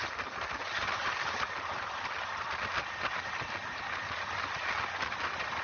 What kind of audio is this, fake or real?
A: real